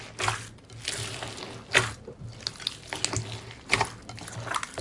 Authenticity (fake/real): real